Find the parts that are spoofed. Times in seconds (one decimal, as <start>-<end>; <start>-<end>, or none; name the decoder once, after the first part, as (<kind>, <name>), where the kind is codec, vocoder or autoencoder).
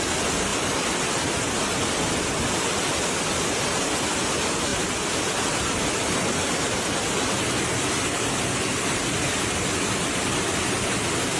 none